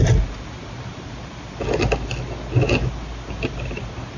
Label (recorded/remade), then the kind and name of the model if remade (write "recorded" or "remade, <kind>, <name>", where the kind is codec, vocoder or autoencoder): recorded